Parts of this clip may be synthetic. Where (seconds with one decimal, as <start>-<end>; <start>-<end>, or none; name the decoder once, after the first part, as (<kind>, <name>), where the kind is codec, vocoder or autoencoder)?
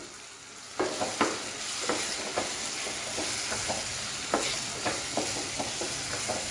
none